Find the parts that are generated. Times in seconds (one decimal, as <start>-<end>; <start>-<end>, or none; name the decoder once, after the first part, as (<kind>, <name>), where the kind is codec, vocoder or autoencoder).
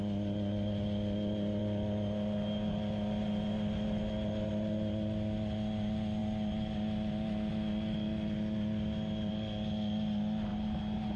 none